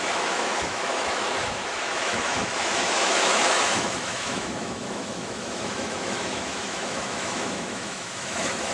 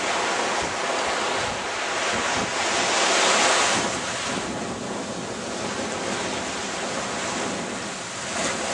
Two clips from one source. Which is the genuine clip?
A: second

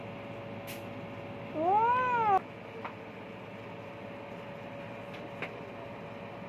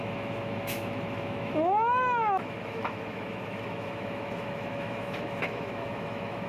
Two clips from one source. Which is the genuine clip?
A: first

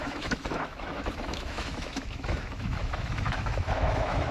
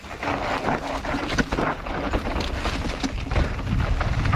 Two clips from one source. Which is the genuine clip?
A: second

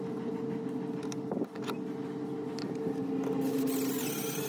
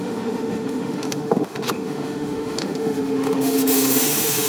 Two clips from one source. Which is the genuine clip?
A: first